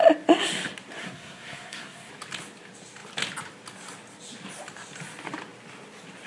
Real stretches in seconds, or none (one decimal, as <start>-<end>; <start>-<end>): 0.0-1.0; 2.1-6.3